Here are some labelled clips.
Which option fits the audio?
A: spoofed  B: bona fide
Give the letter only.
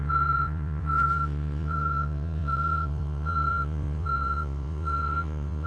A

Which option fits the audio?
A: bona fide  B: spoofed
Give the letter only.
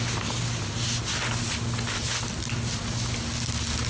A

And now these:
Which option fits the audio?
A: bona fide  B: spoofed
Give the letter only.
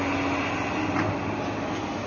A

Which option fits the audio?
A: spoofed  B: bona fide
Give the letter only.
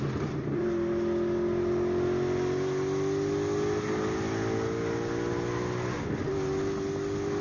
B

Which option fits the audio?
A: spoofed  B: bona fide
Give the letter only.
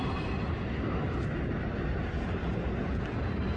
B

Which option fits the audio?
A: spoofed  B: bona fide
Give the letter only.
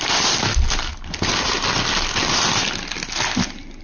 B